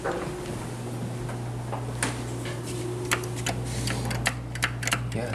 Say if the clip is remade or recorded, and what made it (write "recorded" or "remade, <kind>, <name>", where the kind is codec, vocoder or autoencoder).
recorded